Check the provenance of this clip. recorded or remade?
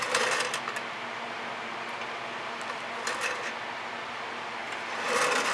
remade